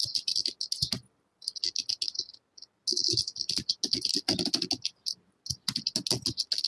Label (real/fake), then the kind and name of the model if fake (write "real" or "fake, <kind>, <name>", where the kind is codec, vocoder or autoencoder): real